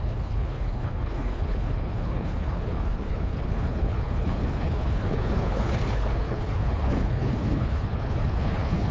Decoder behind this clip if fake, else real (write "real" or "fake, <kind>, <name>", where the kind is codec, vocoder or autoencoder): fake, codec, HILCodec